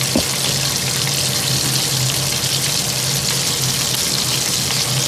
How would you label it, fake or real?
real